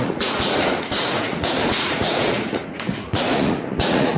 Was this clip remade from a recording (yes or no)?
yes